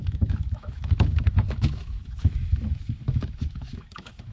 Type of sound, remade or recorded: remade